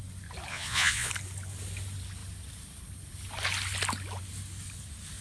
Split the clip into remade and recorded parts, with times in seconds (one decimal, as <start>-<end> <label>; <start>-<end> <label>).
0.0-0.5 recorded; 0.5-1.1 remade; 1.1-5.2 recorded